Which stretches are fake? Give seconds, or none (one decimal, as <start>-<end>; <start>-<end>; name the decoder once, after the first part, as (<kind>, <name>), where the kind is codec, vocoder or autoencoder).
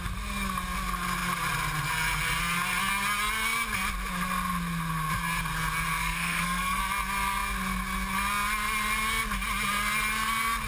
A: 6.0-6.8 (codec, SNAC)